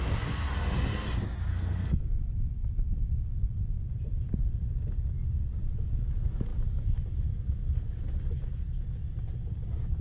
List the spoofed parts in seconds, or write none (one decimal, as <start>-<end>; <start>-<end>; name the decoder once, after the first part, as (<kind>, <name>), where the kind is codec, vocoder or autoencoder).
1.5-2.0 (codec, SNAC)